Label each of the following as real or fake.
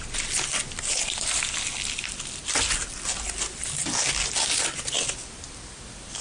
real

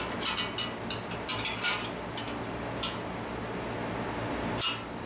real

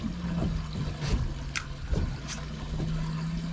real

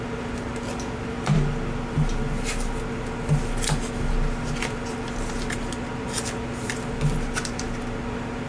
real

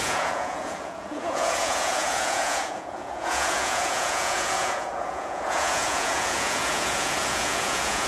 fake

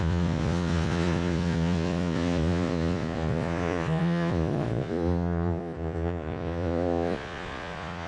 fake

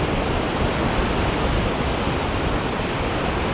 real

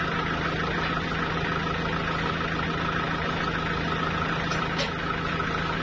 real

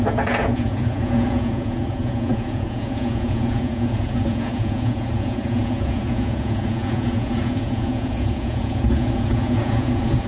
fake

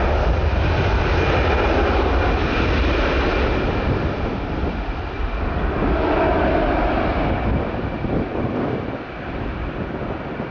real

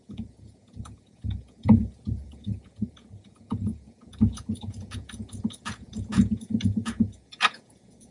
fake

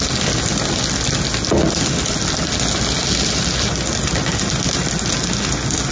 real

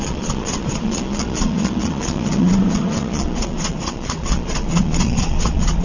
fake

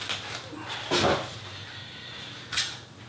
real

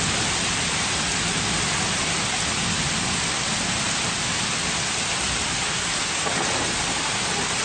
real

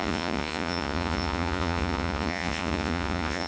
fake